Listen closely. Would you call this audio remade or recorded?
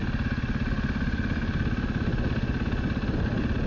recorded